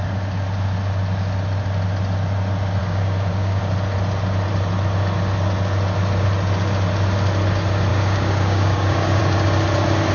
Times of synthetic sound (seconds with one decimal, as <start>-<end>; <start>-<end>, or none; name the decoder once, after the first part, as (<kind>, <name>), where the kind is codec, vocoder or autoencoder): 2.8-3.6 (codec, DAC); 7.9-9.2